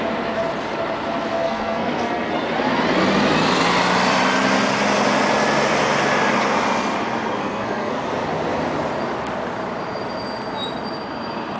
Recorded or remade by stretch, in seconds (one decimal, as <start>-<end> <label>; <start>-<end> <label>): 0.0-1.3 recorded; 1.3-2.3 remade; 2.3-7.4 recorded; 7.4-8.0 remade; 8.0-11.6 recorded